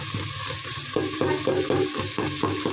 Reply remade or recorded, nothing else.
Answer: recorded